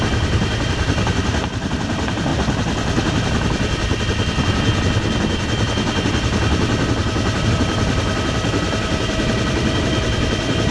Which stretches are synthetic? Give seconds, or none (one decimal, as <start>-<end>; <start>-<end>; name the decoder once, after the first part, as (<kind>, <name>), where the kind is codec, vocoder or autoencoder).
0.0-2.3 (vocoder, BigVGAN v2); 7.5-10.7